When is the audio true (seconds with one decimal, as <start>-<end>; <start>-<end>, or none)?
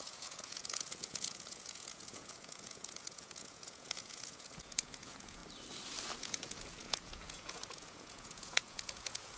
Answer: 5.4-6.2